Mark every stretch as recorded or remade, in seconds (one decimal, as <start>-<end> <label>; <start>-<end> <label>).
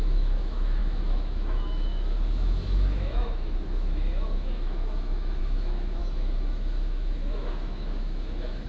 0.0-8.7 remade